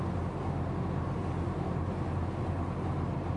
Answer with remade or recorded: recorded